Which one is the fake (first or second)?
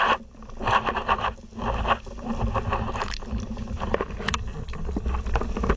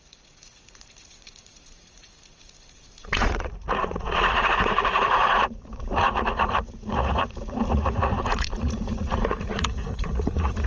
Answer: second